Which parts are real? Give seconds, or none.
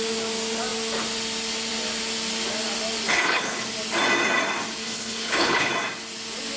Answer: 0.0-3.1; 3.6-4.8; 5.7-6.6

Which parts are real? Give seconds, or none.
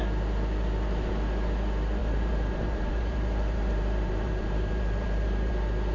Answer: 0.0-2.0; 5.5-5.9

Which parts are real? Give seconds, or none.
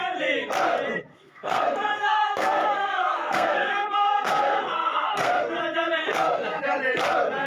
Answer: 0.0-1.1; 5.6-6.0; 6.6-7.5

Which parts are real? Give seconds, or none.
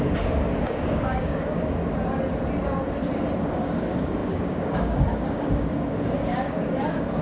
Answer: 1.8-3.4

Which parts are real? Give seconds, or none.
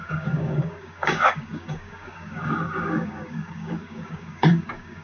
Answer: none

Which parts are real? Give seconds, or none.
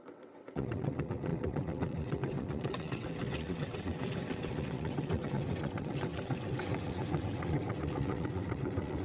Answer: none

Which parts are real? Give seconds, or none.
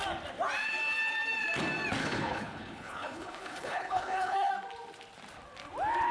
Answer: 0.0-2.0; 4.5-6.1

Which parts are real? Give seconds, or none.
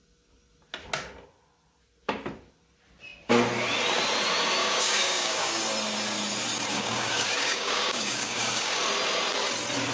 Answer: 0.0-4.6; 5.6-6.7; 8.8-9.9